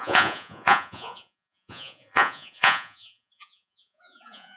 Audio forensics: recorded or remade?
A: remade